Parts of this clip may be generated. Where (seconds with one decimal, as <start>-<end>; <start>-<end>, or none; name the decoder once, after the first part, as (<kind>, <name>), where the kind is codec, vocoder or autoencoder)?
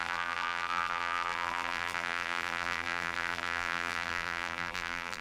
0.0-5.2 (vocoder, BigVGAN v2)